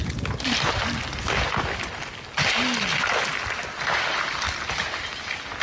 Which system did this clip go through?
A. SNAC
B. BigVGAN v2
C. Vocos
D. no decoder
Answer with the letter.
D